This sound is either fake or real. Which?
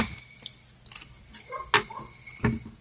real